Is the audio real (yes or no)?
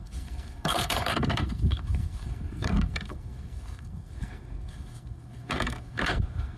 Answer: no